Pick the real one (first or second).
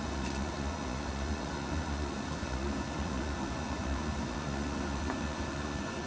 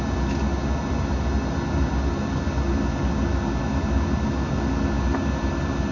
second